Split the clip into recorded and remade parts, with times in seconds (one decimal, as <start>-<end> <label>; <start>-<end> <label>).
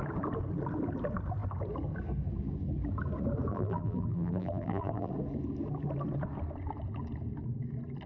0.0-3.5 recorded; 3.5-5.1 remade; 5.1-8.1 recorded